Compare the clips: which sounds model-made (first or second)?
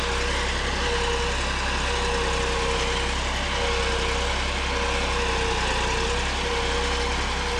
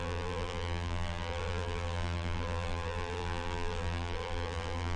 second